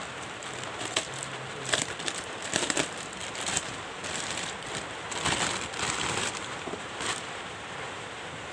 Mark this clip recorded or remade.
remade